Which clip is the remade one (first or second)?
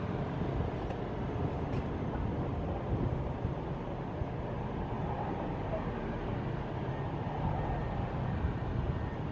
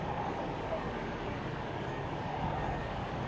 second